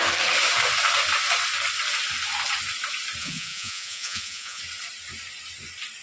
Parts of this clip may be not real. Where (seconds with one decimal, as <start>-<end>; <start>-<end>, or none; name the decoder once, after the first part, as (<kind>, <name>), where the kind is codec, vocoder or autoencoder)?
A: 3.2-4.6 (vocoder, Vocos)